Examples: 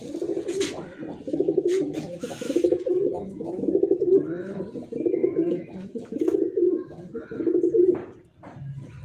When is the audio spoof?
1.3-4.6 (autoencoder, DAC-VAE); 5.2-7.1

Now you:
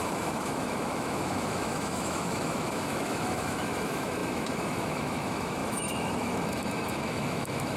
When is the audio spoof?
0.0-7.8 (autoencoder, DAC-VAE)

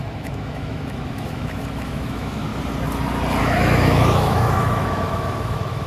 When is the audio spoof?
0.0-2.5 (autoencoder, DAC-VAE); 3.4-5.9

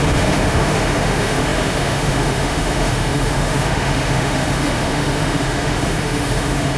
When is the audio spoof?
0.0-6.8 (autoencoder, DAC-VAE)

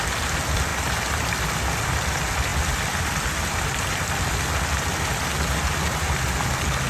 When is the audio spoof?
none

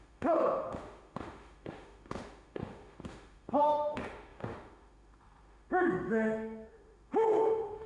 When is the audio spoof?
0.0-7.9 (autoencoder, DAC-VAE)

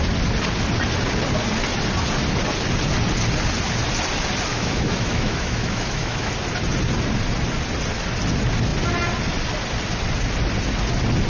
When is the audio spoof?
4.5-6.3 (autoencoder, DAC-VAE)

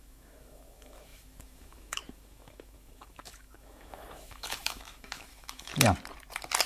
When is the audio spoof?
0.0-5.7 (autoencoder, DAC-VAE)